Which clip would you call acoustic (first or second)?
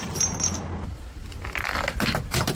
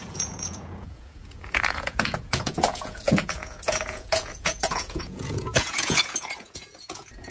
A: first